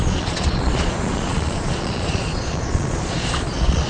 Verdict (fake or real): fake